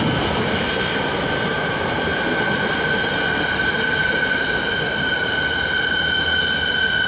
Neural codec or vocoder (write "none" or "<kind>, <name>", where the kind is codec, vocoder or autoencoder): none